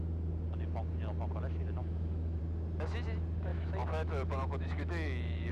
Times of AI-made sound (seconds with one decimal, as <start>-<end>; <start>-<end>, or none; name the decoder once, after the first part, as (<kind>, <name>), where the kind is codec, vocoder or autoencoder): 1.8-2.4 (autoencoder, DAC-VAE); 3.5-5.5